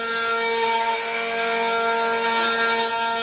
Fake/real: real